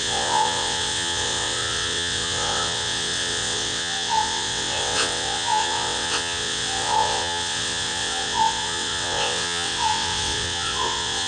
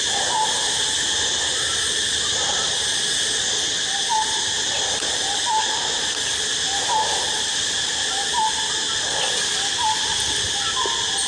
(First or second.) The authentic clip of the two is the second